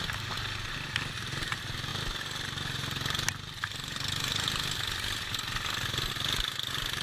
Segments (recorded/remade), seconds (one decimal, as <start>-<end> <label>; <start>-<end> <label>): 0.0-7.0 recorded